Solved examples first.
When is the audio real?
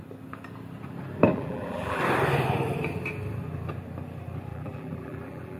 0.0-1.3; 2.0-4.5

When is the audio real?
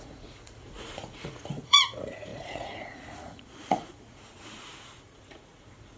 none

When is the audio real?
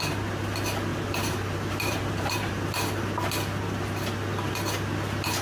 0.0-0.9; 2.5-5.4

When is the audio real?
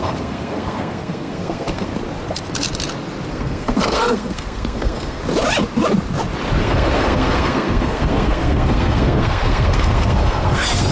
1.9-3.3; 5.2-6.6